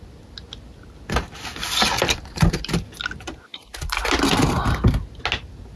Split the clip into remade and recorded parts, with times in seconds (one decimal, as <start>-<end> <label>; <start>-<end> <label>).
0.0-5.8 recorded